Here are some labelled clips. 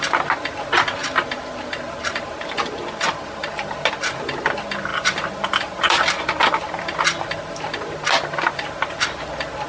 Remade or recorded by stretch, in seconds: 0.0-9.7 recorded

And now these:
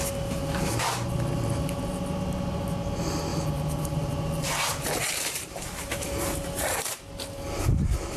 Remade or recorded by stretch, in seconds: 0.0-3.3 recorded; 3.3-6.8 remade; 6.8-8.2 recorded

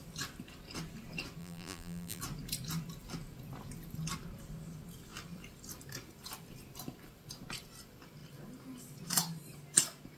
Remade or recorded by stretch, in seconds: 0.0-1.4 recorded; 1.4-2.2 remade; 2.2-10.2 recorded

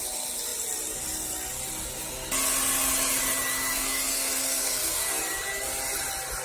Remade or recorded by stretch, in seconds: 0.0-3.7 recorded; 3.7-5.2 remade; 5.2-6.4 recorded

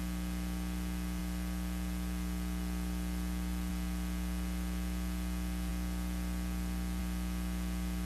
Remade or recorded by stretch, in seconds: 0.0-1.2 recorded; 1.2-3.7 remade; 3.7-5.7 recorded; 5.7-7.0 remade; 7.0-8.1 recorded

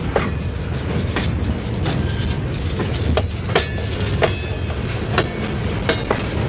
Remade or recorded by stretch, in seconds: 0.0-6.5 recorded